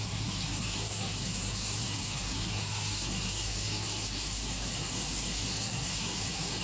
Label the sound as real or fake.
fake